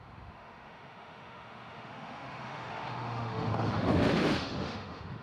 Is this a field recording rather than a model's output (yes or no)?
no